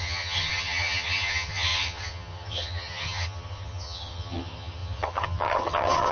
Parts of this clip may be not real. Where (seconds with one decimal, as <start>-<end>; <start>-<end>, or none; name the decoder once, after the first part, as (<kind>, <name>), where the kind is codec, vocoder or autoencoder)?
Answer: 0.0-6.1 (vocoder, HiFi-GAN)